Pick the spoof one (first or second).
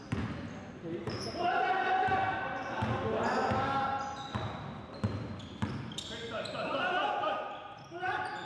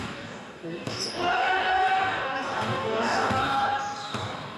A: second